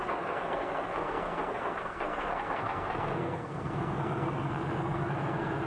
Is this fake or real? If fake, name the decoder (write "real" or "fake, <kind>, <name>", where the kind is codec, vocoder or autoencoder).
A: fake, codec, SNAC